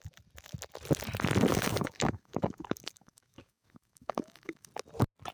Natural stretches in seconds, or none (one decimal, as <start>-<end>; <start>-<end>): 0.0-1.5; 4.7-5.3